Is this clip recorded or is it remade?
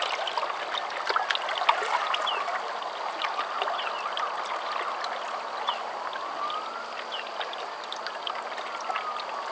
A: recorded